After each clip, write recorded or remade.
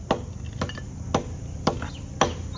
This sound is recorded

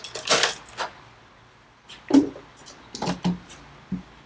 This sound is recorded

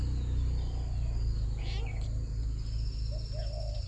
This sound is recorded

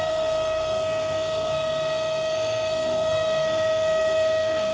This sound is remade